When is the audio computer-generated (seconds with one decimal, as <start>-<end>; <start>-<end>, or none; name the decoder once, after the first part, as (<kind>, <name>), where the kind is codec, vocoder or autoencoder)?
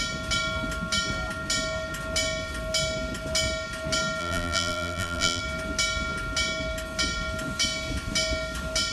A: 4.2-5.4 (vocoder, BigVGAN v2)